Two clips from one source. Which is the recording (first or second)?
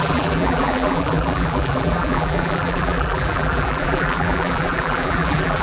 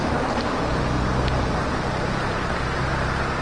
second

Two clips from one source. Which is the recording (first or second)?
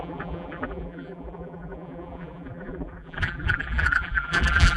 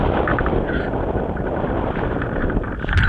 second